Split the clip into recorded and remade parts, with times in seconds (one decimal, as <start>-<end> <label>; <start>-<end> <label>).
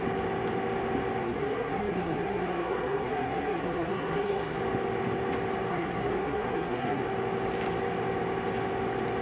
0.0-1.2 recorded; 1.2-4.6 remade; 4.6-5.7 recorded; 5.7-7.0 remade; 7.0-9.2 recorded